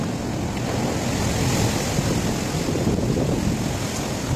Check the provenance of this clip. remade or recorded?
recorded